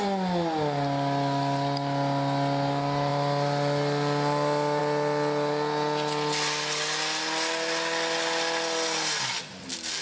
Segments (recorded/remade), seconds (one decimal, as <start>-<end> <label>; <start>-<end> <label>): 0.0-10.0 recorded